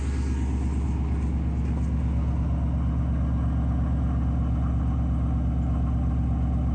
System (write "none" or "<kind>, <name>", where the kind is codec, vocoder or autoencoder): none